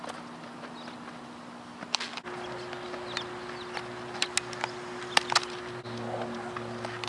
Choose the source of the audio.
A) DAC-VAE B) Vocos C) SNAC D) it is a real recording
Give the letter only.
D